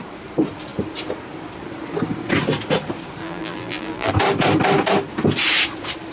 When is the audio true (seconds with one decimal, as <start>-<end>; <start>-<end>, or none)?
0.0-3.2; 4.1-6.1